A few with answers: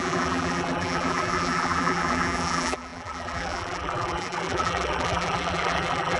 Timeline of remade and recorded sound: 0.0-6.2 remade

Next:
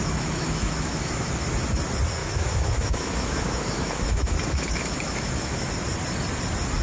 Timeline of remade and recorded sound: 0.0-1.3 remade; 1.3-2.2 recorded; 2.2-5.7 remade; 5.7-6.8 recorded